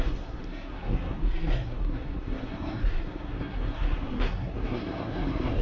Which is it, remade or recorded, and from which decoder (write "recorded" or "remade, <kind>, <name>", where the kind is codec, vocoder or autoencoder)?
remade, codec, SNAC